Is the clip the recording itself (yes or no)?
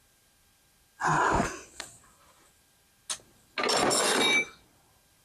yes